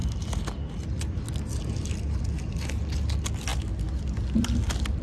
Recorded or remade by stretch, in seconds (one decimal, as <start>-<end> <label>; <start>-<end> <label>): 0.0-5.0 recorded